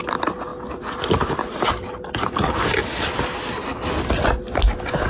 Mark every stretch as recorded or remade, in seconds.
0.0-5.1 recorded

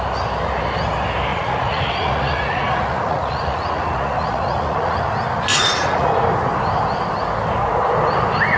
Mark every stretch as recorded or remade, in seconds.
0.0-1.3 recorded; 1.3-5.0 remade; 5.0-5.5 recorded; 5.5-6.1 remade; 6.1-8.6 recorded

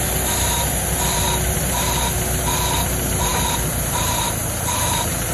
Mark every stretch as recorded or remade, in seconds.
0.0-5.3 recorded